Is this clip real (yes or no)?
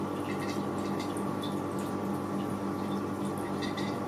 yes